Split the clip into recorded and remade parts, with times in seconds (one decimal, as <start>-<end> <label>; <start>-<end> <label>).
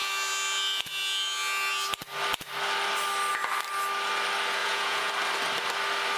0.0-4.6 recorded; 4.6-5.1 remade; 5.1-6.2 recorded